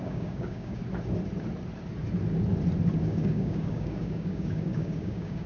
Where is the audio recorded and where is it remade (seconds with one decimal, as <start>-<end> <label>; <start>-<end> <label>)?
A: 0.0-0.8 remade; 0.8-3.0 recorded; 3.0-5.5 remade